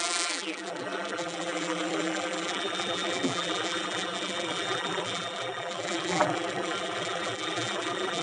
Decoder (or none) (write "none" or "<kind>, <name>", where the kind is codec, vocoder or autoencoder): vocoder, BigVGAN v2